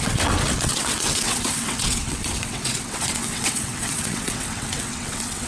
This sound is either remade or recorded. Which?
remade